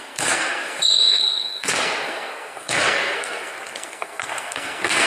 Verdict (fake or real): fake